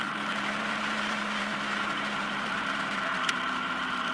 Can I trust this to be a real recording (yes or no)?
no